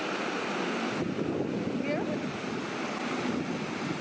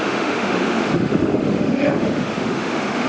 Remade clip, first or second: second